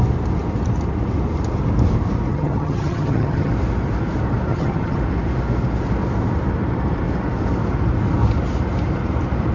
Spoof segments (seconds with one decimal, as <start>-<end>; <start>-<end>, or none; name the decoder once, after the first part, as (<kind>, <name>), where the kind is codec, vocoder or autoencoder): 2.3-3.5 (vocoder, HiFi-GAN); 4.5-5.0